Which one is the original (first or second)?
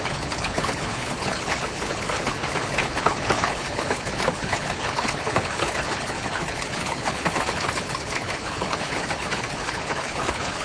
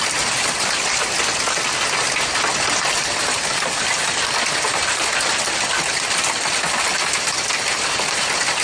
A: second